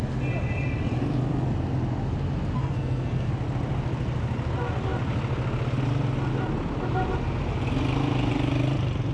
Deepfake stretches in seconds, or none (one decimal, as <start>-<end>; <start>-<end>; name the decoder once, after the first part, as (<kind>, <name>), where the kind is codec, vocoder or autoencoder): 2.6-3.3 (codec, SNAC)